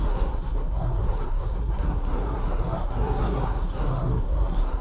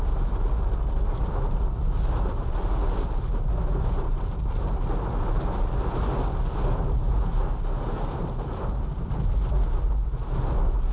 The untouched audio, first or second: second